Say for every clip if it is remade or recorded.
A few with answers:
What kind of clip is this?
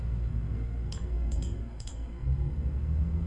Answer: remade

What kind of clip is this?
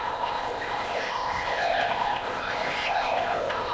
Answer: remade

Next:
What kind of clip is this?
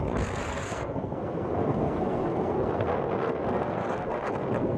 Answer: remade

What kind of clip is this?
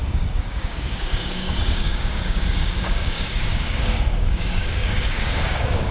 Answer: remade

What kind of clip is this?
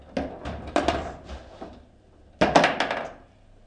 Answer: recorded